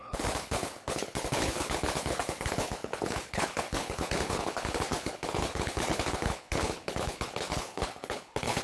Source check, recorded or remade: remade